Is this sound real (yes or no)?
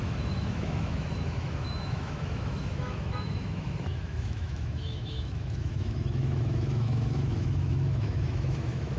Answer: no